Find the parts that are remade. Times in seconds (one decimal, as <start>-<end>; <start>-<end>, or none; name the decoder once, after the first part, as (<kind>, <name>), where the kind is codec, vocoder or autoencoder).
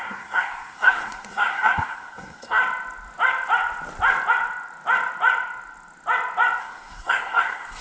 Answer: 0.0-2.6 (codec, SNAC); 6.6-7.8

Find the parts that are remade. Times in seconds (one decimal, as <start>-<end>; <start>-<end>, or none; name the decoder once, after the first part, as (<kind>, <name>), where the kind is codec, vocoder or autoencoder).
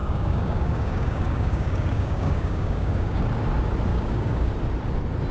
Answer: 0.0-3.2 (codec, DAC); 3.9-4.5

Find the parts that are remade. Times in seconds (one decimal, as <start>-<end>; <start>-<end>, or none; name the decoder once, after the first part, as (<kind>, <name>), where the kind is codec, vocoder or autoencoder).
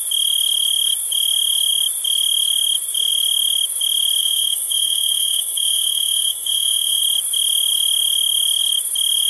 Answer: 4.2-7.0 (autoencoder, DAC-VAE)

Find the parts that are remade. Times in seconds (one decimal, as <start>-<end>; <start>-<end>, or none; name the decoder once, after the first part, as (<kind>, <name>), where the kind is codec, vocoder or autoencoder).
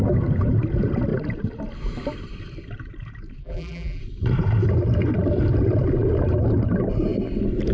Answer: 3.4-4.0 (vocoder, BigVGAN v2)